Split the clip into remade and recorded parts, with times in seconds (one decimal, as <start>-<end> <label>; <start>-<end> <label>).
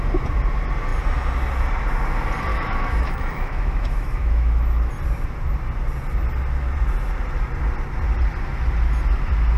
0.0-2.5 recorded; 2.5-4.9 remade; 4.9-9.6 recorded